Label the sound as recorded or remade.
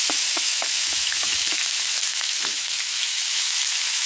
remade